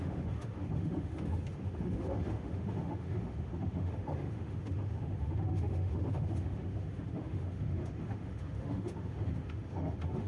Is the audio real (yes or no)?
no